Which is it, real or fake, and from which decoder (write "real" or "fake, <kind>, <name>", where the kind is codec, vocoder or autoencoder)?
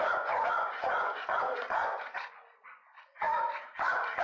fake, vocoder, Vocos